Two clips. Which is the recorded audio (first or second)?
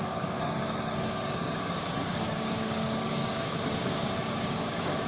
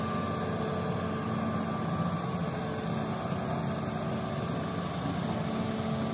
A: second